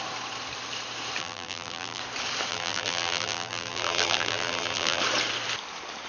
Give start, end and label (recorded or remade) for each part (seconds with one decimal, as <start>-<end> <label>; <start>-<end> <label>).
0.0-1.2 recorded; 1.2-2.0 remade; 2.0-2.5 recorded; 2.5-5.0 remade; 5.0-6.1 recorded